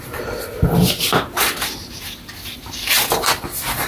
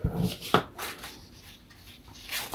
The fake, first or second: second